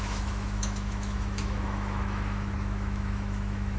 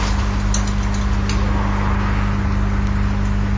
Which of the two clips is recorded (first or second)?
second